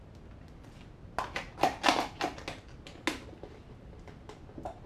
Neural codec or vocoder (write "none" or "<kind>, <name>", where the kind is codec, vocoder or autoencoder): none